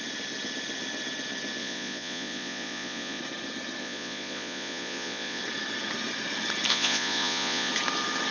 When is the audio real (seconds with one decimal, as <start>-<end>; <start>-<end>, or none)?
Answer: 0.0-1.6; 3.2-3.8; 5.4-6.7; 7.7-8.3